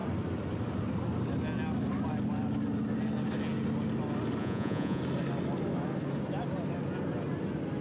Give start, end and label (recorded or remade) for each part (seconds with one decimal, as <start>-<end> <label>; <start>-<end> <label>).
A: 0.0-4.4 recorded; 4.4-5.0 remade; 5.0-7.8 recorded